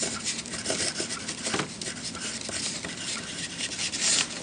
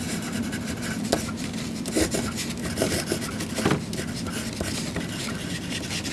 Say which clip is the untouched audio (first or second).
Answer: second